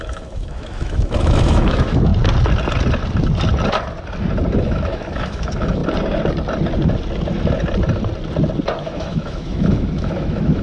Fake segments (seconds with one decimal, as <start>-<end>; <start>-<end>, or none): 0.0-2.1; 4.6-5.8; 8.8-10.6